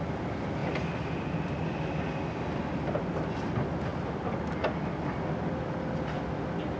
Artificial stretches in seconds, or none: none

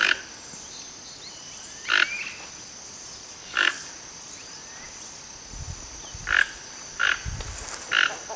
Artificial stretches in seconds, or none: 3.3-3.9 (codec, DAC)

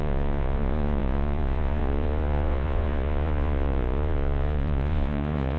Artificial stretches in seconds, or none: 0.0-5.6 (vocoder, Vocos)